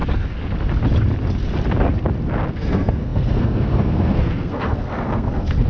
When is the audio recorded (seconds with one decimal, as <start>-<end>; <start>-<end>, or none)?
0.0-2.5